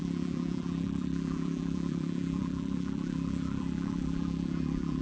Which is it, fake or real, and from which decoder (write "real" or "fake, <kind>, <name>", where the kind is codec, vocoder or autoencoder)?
fake, vocoder, BigVGAN v2